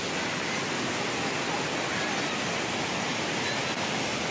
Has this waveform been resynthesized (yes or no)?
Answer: no